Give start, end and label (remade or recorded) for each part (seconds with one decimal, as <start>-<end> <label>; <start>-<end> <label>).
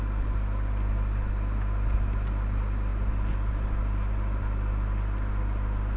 0.0-6.0 recorded